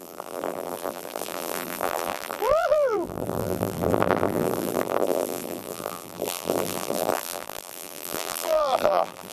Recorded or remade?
remade